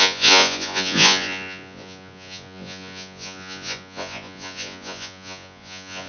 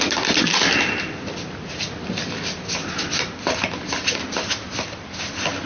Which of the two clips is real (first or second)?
second